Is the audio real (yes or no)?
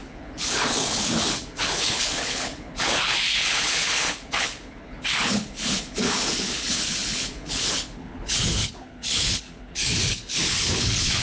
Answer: no